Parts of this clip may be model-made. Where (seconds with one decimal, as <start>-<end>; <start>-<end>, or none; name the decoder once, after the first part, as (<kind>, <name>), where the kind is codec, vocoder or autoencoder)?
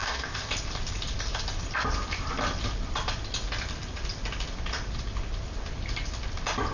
0.0-0.5 (codec, DAC)